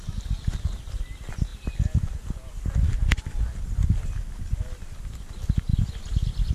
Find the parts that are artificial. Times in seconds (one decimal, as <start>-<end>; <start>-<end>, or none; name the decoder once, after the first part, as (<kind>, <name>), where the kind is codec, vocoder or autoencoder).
none